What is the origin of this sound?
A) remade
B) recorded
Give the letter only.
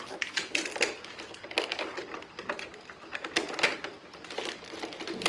B